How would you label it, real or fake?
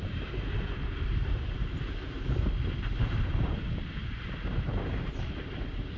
fake